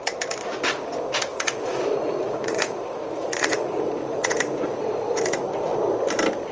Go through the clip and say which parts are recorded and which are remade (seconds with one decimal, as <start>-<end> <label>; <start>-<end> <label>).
0.0-1.3 recorded; 1.3-5.2 remade; 5.2-6.5 recorded